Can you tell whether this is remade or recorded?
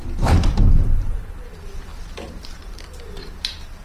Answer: remade